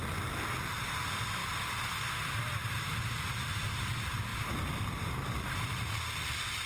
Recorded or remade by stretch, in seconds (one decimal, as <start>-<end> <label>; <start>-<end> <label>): 0.0-1.4 recorded; 1.4-3.7 remade; 3.7-4.3 recorded; 4.3-5.6 remade; 5.6-6.7 recorded